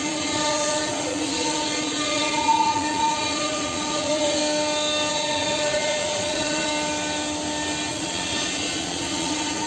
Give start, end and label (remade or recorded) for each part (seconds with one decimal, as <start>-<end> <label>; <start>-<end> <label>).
0.0-4.4 remade; 4.4-5.1 recorded; 5.1-6.7 remade; 6.7-7.9 recorded; 7.9-9.7 remade